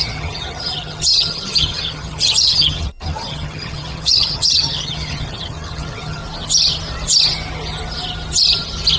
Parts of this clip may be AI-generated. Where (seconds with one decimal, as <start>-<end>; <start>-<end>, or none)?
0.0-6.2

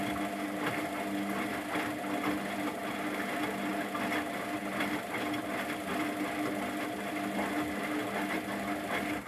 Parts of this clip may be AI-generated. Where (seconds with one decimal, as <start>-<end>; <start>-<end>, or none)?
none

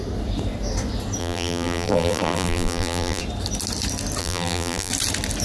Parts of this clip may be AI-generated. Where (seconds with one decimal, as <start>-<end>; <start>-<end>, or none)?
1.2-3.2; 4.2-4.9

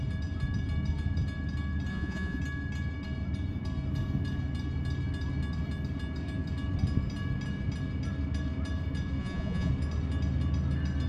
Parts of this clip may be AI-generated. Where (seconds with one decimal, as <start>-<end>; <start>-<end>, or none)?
1.9-2.4; 9.2-9.7

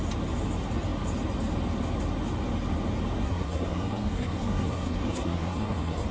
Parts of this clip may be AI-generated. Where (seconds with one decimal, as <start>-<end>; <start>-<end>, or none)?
3.2-6.1

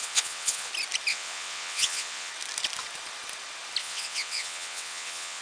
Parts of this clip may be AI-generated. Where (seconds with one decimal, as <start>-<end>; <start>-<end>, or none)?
0.0-0.7; 1.1-2.3; 3.8-5.4